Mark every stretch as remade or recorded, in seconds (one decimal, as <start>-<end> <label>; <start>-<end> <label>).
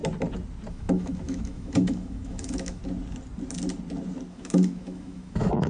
0.0-0.7 recorded; 0.7-2.8 remade; 2.8-4.3 recorded; 4.3-5.7 remade